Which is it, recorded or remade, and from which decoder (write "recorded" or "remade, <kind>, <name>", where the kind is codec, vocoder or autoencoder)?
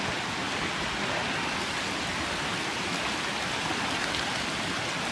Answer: recorded